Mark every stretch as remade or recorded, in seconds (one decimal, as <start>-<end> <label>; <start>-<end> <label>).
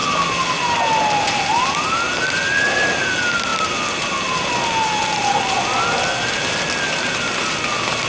0.0-8.1 recorded